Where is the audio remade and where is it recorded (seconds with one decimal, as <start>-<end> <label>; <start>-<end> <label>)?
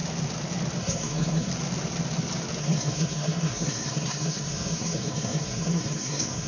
0.0-0.8 recorded; 0.8-1.5 remade; 1.5-2.6 recorded; 2.6-6.5 remade